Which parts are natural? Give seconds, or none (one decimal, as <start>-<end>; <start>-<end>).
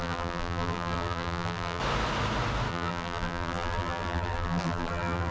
1.8-2.7